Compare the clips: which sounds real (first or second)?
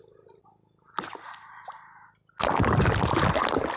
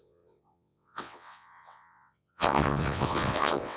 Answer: first